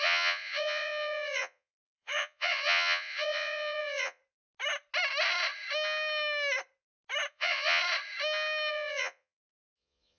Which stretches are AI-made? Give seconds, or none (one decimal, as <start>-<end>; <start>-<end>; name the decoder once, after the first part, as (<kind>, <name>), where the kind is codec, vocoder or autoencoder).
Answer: 0.0-4.2 (vocoder, Vocos); 7.3-7.8; 8.7-10.2